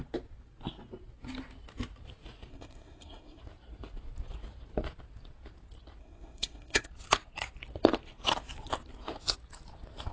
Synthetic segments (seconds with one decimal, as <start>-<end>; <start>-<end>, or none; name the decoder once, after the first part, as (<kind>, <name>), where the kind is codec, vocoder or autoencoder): 2.5-3.4 (codec, SNAC); 6.0-6.9